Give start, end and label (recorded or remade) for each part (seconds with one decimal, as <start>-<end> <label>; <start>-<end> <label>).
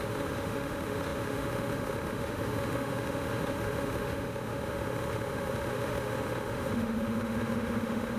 0.0-8.2 remade